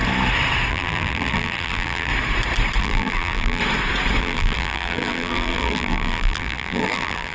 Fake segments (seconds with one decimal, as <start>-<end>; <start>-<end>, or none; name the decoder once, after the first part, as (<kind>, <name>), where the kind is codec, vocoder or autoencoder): 0.7-2.1 (vocoder, BigVGAN v2); 2.8-3.6; 4.2-7.3